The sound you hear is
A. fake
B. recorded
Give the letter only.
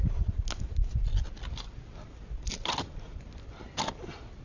B